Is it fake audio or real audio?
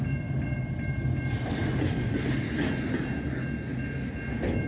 real